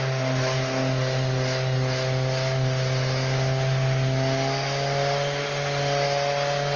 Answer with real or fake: real